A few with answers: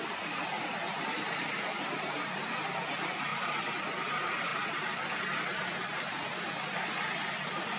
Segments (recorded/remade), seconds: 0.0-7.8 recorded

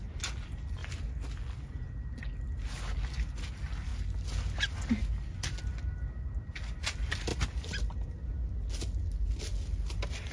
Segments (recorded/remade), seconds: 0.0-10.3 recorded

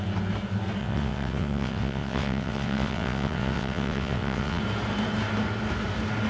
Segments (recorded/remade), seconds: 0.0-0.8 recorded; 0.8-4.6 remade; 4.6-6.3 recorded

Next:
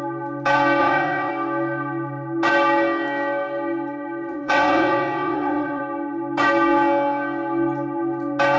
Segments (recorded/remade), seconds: 0.0-0.8 recorded; 0.8-1.3 remade; 1.3-4.3 recorded; 4.3-5.8 remade; 5.8-8.6 recorded